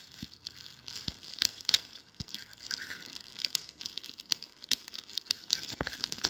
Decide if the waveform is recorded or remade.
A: remade